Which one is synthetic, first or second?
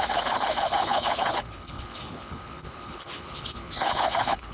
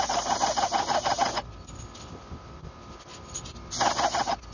first